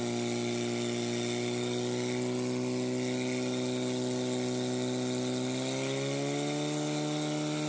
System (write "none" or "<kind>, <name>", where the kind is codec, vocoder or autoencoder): none